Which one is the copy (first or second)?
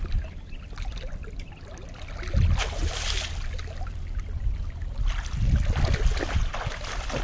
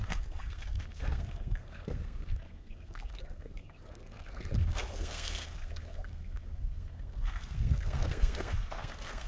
second